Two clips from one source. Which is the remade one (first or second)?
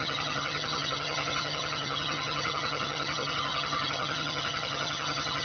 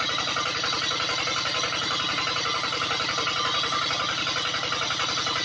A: first